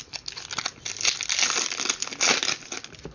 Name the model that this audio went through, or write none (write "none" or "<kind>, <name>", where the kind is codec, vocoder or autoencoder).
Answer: none